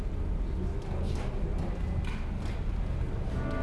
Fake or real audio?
real